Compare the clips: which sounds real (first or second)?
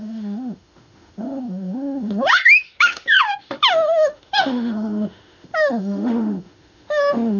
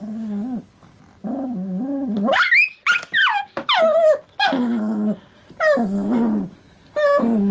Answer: second